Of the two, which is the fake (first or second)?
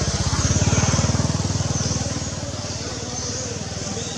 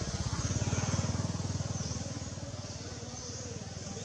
second